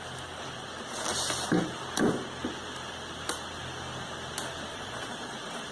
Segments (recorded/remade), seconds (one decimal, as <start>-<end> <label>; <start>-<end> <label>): 0.0-4.7 recorded; 4.7-5.3 remade; 5.3-5.7 recorded